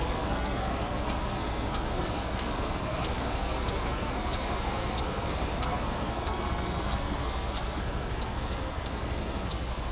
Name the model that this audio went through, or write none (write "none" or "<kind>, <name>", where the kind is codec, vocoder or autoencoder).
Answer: codec, SNAC